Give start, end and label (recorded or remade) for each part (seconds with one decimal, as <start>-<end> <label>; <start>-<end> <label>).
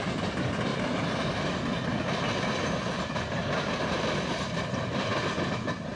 0.0-6.0 recorded